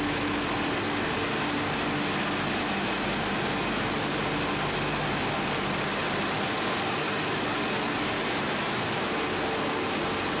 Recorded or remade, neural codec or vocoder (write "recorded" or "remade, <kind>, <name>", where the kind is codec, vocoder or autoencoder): recorded